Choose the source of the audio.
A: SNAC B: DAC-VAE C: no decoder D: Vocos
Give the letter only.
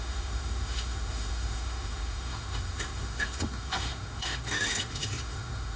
B